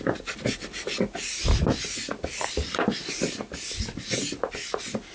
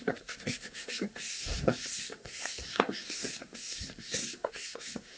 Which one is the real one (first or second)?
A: first